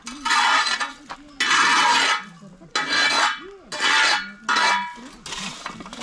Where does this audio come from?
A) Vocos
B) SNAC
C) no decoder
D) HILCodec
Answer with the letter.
C